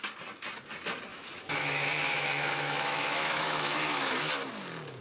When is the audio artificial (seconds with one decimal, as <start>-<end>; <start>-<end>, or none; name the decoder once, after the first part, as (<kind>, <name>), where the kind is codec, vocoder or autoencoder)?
1.1-4.1 (autoencoder, DAC-VAE)